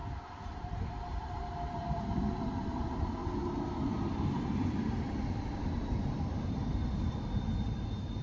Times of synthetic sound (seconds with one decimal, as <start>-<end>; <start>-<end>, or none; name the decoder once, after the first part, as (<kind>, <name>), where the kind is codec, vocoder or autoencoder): 0.6-3.2 (vocoder, BigVGAN v2); 5.7-8.2